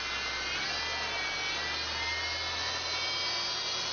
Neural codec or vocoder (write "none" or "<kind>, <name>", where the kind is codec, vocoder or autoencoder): none